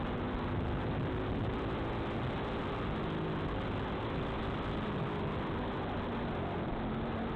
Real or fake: real